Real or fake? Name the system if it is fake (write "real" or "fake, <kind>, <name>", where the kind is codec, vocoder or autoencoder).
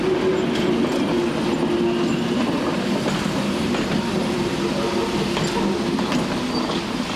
real